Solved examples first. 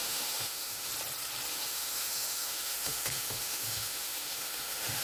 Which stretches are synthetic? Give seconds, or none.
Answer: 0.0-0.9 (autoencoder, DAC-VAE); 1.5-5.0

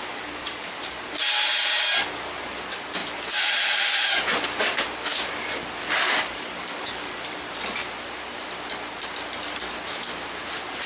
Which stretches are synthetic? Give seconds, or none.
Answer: 0.4-1.1 (codec, DAC); 5.8-7.5

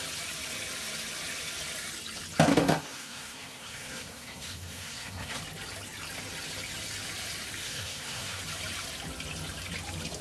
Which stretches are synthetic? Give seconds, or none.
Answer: 2.5-5.4 (codec, SNAC); 7.6-8.4

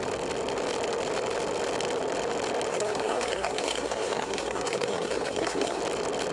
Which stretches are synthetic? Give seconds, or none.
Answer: 2.7-5.8 (codec, SNAC)

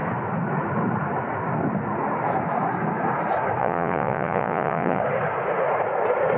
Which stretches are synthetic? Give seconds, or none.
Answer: 3.6-5.0 (vocoder, Vocos)

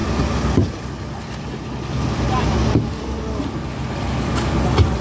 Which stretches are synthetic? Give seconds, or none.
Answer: none